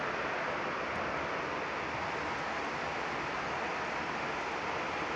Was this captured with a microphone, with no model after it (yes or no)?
yes